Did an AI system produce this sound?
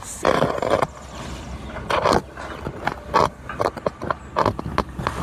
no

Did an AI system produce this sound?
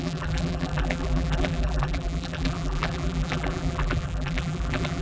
yes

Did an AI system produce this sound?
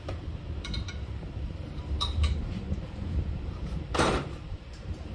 yes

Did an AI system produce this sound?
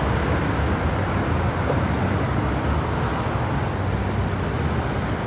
no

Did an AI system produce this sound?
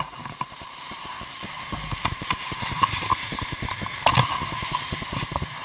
yes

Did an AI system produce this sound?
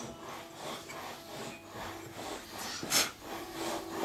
no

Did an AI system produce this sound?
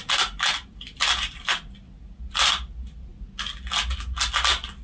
no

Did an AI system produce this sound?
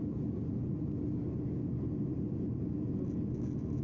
no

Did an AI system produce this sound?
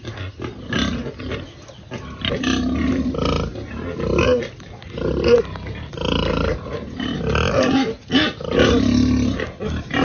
no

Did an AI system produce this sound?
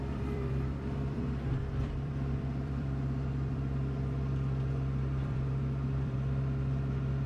yes